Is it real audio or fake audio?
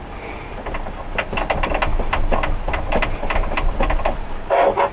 real